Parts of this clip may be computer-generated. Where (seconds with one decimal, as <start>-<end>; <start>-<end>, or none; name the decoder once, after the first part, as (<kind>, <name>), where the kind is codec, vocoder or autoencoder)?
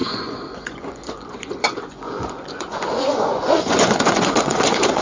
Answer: 0.0-5.0 (vocoder, Vocos)